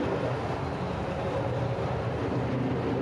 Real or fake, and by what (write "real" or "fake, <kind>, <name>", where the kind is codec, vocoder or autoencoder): real